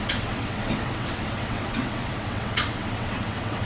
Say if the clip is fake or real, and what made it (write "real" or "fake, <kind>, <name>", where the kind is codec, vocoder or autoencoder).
fake, vocoder, WaveNeXt